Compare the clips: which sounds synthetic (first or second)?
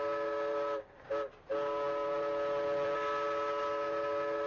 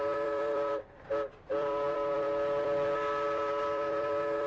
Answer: second